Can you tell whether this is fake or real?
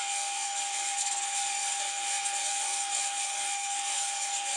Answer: fake